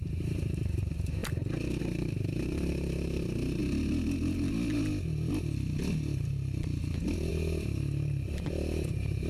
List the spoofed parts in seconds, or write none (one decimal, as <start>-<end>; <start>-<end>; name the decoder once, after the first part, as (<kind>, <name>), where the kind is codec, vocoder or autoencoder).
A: 0.0-1.2 (vocoder, BigVGAN v2); 1.8-3.6; 7.3-9.3